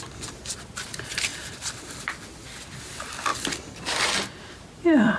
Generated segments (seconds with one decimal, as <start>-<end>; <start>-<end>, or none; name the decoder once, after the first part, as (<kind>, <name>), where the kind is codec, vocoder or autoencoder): none